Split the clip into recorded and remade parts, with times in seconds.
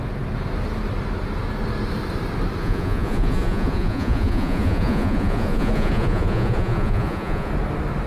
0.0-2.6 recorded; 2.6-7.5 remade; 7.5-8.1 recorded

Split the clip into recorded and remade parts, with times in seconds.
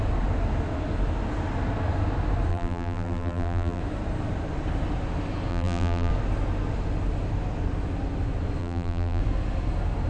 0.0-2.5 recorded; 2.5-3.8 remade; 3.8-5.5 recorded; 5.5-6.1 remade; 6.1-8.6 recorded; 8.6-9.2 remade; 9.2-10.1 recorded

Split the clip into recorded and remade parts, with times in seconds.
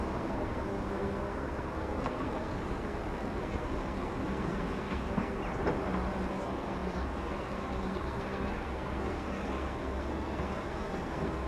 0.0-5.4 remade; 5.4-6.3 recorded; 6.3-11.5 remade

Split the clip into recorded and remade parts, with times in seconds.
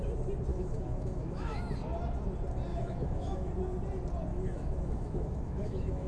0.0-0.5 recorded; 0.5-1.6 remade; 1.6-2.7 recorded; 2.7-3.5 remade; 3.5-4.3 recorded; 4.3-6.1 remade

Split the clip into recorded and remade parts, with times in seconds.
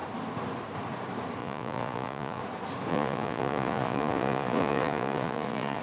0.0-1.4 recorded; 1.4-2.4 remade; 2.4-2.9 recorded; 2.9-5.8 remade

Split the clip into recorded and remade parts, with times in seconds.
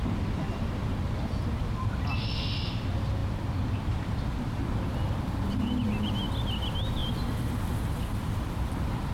0.0-7.0 recorded; 7.0-9.1 remade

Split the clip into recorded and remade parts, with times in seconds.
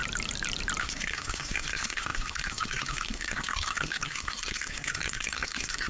0.0-0.8 recorded; 0.8-5.9 remade